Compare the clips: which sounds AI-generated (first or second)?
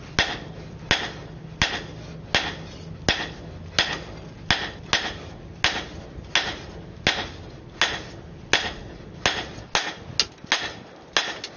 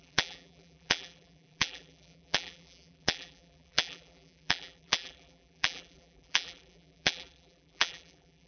second